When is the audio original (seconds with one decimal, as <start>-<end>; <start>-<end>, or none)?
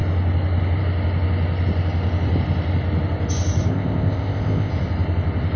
0.0-3.7; 4.7-5.6